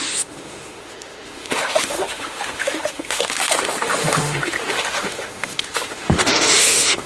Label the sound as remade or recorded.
remade